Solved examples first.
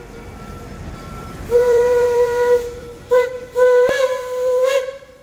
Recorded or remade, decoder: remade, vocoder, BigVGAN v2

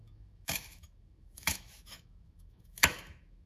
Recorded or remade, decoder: remade, autoencoder, DAC-VAE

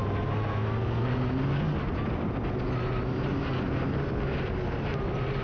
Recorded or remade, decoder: recorded